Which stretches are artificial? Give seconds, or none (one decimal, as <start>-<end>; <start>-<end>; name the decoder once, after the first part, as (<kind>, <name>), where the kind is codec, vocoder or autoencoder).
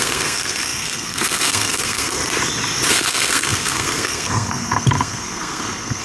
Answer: 0.0-2.2 (codec, SNAC); 2.9-6.0